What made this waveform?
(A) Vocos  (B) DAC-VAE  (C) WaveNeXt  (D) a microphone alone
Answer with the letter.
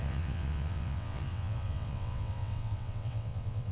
C